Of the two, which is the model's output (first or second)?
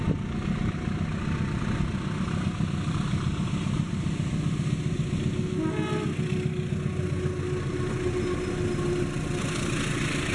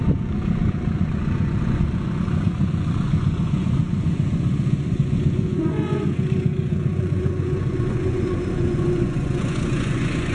second